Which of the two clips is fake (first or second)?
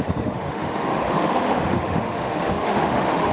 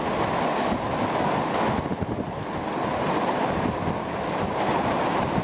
first